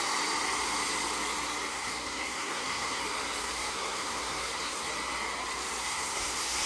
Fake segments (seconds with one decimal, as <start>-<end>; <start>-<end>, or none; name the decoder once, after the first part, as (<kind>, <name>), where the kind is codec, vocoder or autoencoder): 1.7-3.0 (codec, SNAC); 3.4-4.9; 5.8-6.7